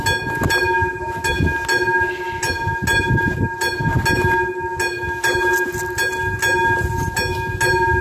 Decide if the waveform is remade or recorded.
recorded